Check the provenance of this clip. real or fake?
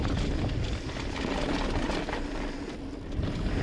real